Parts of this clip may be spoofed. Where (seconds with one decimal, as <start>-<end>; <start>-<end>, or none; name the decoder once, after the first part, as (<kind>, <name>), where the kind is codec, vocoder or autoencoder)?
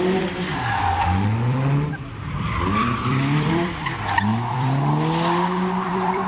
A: 0.0-6.3 (vocoder, BigVGAN v2)